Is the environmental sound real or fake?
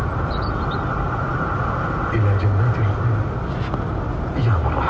real